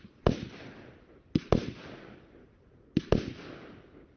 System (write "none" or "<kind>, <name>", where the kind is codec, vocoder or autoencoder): none